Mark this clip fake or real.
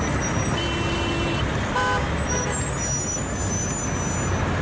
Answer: real